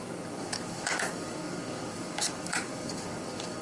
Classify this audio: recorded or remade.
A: remade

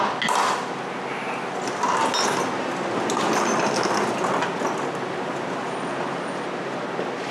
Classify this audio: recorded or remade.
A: recorded